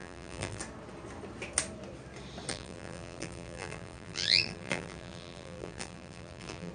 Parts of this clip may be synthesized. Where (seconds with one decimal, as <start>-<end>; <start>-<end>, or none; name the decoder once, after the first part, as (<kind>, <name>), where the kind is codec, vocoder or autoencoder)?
0.0-0.6 (vocoder, BigVGAN v2); 2.5-6.7